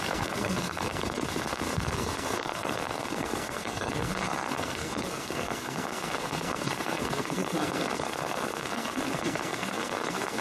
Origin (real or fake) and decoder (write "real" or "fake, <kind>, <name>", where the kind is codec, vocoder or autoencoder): fake, codec, SNAC